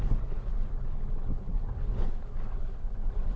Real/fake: fake